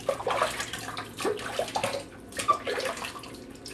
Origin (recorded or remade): recorded